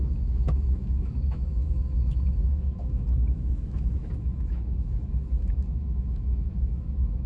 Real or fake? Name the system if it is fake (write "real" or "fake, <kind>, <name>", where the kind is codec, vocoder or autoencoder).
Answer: fake, autoencoder, DAC-VAE